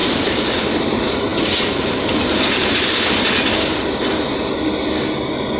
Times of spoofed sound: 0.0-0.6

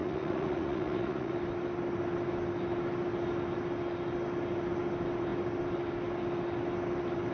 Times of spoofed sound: 0.0-1.3

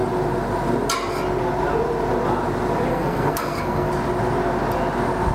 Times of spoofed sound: 2.9-3.9

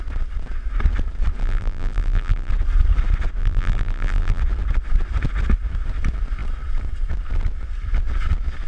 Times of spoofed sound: 1.4-2.5; 3.4-4.4